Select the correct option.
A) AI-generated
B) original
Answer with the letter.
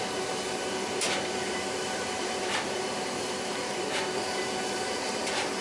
A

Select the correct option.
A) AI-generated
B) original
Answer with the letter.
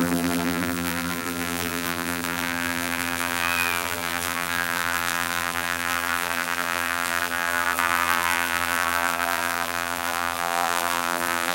A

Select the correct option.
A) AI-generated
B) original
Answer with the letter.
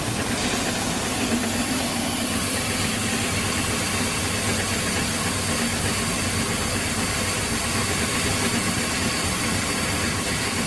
B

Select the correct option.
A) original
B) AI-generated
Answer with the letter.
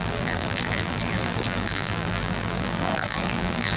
B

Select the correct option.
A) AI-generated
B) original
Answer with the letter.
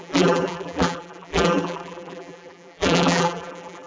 A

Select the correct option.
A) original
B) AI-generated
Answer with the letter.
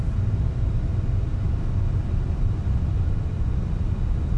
A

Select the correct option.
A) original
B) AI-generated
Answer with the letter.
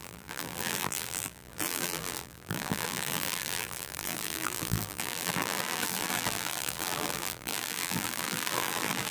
B